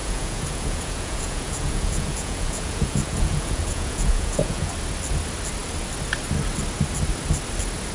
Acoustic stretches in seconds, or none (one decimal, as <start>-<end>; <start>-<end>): 4.7-7.9

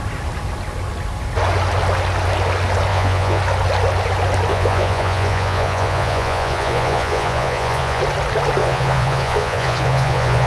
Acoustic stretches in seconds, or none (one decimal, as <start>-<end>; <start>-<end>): 0.0-2.9; 3.4-4.5; 8.0-8.6